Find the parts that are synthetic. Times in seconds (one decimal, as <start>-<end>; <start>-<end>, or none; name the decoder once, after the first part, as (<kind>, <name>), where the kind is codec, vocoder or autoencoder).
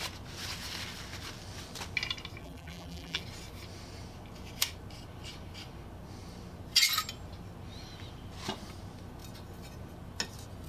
2.4-3.2 (vocoder, BigVGAN v2)